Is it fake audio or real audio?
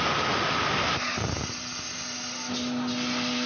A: real